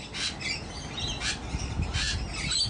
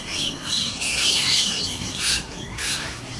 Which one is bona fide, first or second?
first